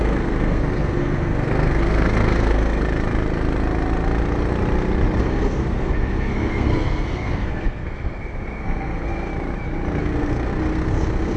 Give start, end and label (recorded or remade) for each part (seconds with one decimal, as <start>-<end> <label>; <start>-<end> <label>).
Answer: 0.0-2.8 remade; 2.8-5.2 recorded; 5.2-9.3 remade; 9.3-10.0 recorded; 10.0-11.4 remade